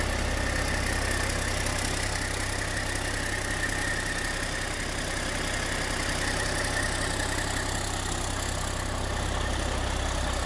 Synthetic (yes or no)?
no